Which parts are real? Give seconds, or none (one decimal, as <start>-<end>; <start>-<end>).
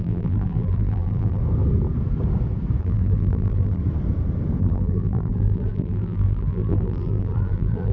1.4-2.8; 3.8-4.6